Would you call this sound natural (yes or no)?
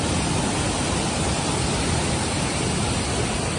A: yes